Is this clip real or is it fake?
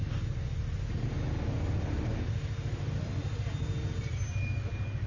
real